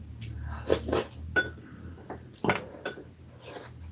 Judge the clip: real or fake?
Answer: real